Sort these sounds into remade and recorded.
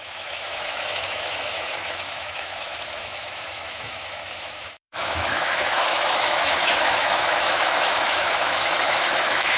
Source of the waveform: remade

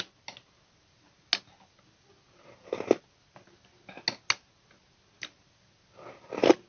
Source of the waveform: recorded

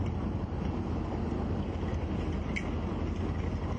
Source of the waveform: recorded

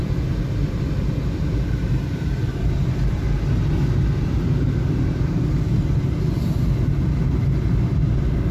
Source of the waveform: recorded